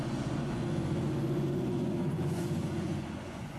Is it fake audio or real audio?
fake